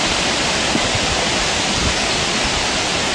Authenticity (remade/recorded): recorded